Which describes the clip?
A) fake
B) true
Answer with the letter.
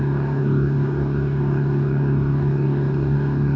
A